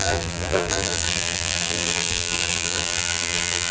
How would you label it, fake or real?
fake